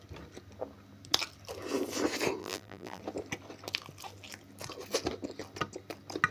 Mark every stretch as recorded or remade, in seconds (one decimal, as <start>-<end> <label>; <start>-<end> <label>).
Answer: 0.0-2.4 recorded; 2.4-3.0 remade; 3.0-6.3 recorded